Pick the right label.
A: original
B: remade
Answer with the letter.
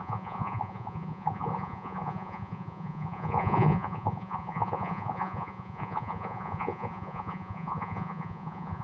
B